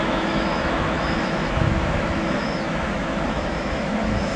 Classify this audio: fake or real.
fake